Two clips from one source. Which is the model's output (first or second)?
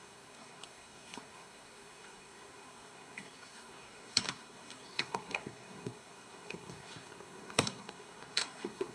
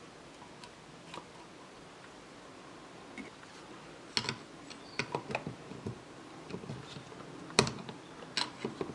first